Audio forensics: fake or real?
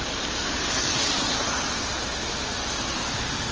real